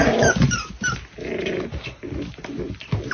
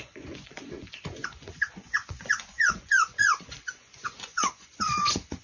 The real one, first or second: first